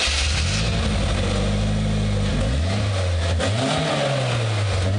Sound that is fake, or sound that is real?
real